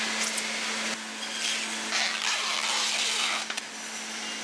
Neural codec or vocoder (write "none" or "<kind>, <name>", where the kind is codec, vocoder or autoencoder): none